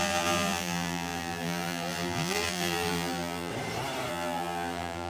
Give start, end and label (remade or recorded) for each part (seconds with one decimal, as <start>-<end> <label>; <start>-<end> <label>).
0.0-3.5 remade; 3.5-4.1 recorded; 4.1-5.1 remade